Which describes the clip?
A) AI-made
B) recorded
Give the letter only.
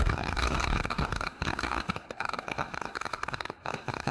A